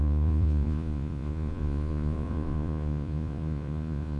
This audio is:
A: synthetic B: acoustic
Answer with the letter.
A